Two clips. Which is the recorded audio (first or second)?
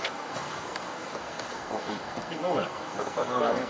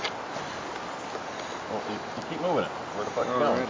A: second